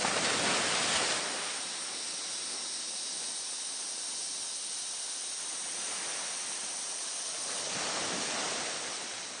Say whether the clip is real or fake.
real